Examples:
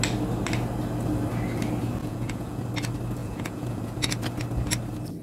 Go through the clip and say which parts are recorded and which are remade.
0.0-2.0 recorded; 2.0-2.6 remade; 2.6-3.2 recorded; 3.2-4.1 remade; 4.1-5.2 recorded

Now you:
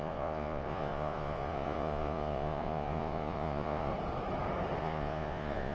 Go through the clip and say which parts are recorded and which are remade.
0.0-3.9 remade; 3.9-4.8 recorded; 4.8-5.7 remade

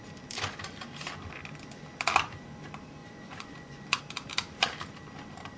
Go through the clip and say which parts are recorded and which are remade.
0.0-3.0 recorded; 3.0-4.0 remade; 4.0-5.6 recorded

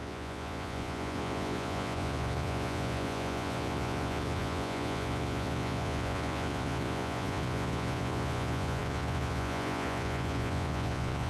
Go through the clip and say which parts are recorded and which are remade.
0.0-11.3 remade

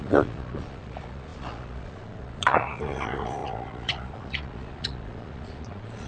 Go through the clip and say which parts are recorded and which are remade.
0.0-6.1 remade

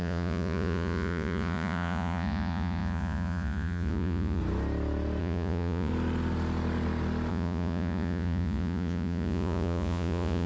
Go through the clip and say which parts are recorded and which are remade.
0.0-4.4 remade; 4.4-5.2 recorded; 5.2-5.9 remade; 5.9-7.3 recorded; 7.3-10.5 remade

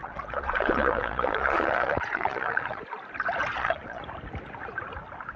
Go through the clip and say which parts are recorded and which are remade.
0.0-2.8 remade; 2.8-3.5 recorded; 3.5-4.0 remade; 4.0-5.4 recorded